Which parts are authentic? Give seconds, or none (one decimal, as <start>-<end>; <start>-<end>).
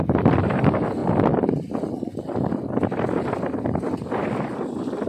0.0-5.1